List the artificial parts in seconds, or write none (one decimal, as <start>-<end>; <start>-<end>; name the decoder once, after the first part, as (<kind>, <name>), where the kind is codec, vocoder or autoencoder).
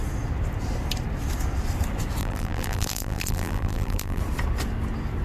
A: 2.2-4.2 (vocoder, BigVGAN v2)